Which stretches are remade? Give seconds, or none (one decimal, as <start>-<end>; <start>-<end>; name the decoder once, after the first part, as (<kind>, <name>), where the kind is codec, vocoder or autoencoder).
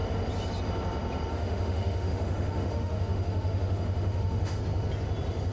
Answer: 1.3-4.6 (autoencoder, DAC-VAE)